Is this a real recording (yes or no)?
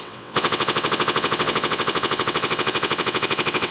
no